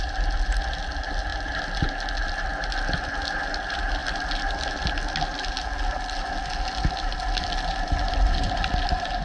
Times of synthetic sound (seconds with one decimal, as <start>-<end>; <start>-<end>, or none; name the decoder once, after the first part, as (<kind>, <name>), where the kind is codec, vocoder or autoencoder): none